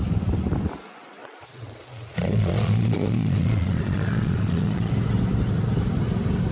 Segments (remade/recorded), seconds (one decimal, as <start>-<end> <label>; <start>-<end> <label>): 0.0-1.2 recorded; 1.2-4.9 remade; 4.9-6.5 recorded